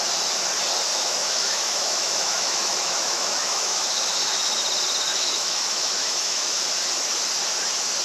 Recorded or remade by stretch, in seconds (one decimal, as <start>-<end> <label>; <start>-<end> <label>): 0.0-0.9 recorded; 0.9-4.6 remade; 4.6-5.1 recorded; 5.1-6.7 remade; 6.7-8.0 recorded